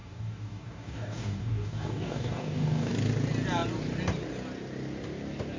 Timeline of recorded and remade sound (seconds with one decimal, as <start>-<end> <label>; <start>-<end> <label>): 0.0-2.9 remade; 2.9-5.6 recorded